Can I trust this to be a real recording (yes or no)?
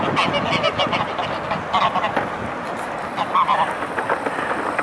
yes